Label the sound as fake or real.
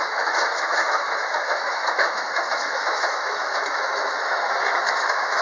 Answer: fake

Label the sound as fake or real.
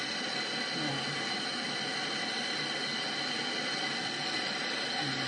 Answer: real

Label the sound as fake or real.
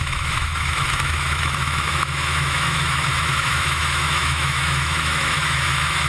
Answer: fake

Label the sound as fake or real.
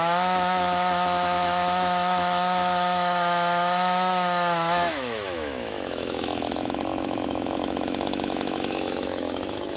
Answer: fake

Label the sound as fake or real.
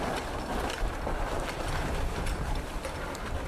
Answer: real